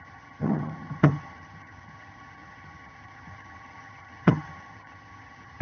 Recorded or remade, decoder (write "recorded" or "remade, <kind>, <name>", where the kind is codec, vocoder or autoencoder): remade, vocoder, HiFi-GAN